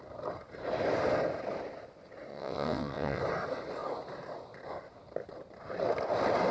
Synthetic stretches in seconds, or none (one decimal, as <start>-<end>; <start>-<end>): 2.3-3.2